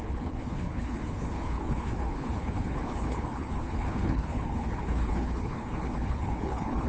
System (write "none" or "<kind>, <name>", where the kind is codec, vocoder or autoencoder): codec, HILCodec